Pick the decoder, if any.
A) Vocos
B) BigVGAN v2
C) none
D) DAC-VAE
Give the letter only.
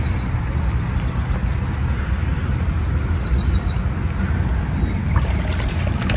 C